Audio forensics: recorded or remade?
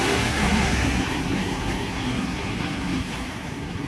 remade